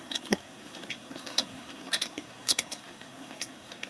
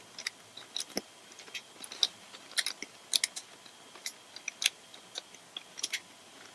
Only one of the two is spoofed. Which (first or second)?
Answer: first